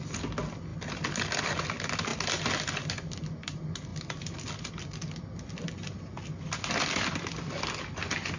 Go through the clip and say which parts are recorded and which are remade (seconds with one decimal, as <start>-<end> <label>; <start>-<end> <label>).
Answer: 0.0-8.4 recorded